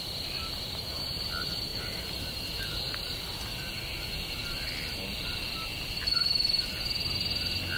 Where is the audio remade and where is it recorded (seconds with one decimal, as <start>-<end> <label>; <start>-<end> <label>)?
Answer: 0.0-1.7 recorded; 1.7-2.6 remade; 2.6-7.8 recorded